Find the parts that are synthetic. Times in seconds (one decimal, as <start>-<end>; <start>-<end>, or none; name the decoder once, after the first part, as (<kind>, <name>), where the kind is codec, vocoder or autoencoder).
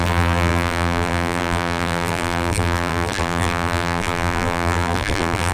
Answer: 0.0-5.5 (vocoder, BigVGAN v2)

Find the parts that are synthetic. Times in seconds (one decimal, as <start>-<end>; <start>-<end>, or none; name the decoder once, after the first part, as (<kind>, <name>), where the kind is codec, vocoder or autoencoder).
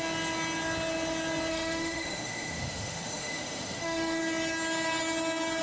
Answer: 1.5-4.2 (autoencoder, DAC-VAE)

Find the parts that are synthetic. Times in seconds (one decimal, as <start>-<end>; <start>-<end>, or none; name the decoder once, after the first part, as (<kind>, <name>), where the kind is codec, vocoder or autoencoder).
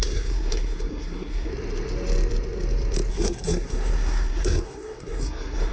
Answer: 0.0-1.5 (codec, SNAC); 3.1-5.7